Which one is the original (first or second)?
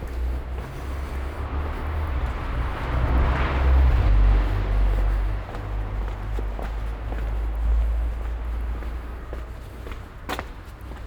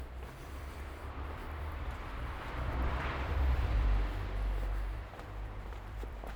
first